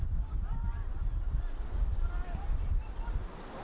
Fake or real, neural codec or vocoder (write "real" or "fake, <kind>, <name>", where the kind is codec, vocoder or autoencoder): real